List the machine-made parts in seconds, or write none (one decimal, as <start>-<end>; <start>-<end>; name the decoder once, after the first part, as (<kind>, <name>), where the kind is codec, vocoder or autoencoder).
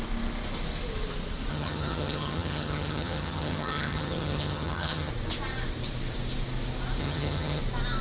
1.5-5.1 (vocoder, HiFi-GAN); 7.0-7.6